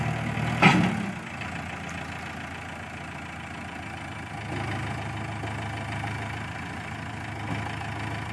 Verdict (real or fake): real